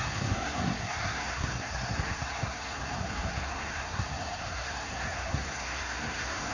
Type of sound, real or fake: fake